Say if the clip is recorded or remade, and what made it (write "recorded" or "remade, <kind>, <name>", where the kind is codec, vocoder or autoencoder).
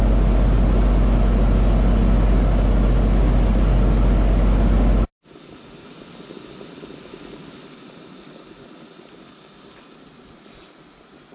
recorded